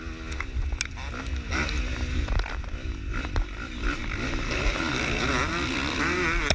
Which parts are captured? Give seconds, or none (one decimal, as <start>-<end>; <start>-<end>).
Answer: 0.0-6.5